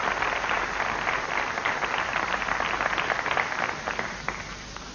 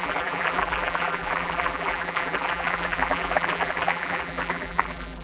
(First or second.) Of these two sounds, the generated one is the second